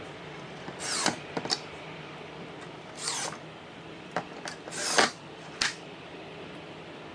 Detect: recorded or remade recorded